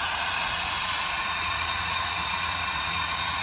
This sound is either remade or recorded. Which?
remade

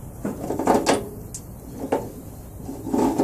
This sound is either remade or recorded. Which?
recorded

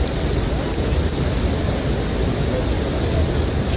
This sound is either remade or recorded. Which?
recorded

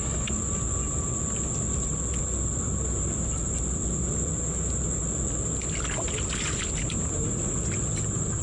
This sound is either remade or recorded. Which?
recorded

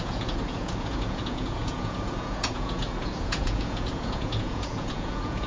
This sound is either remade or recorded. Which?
remade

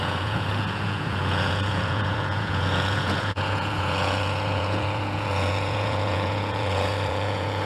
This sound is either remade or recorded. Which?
remade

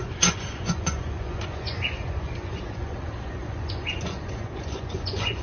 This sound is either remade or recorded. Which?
remade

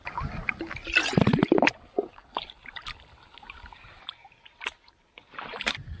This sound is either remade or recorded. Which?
recorded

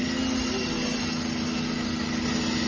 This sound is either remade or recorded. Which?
recorded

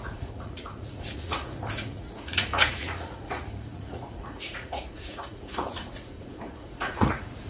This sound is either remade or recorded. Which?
remade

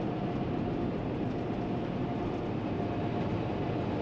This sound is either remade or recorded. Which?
recorded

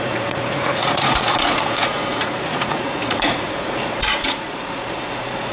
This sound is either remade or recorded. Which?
remade